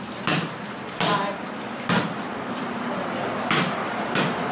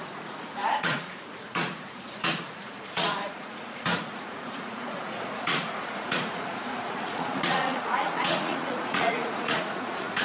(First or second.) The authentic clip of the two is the first